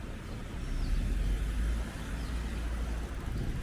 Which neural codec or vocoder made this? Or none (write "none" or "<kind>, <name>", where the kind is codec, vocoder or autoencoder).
none